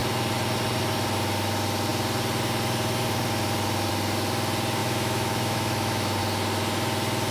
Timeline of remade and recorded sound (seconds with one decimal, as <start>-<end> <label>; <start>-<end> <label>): 0.0-4.8 recorded; 4.8-6.2 remade; 6.2-7.3 recorded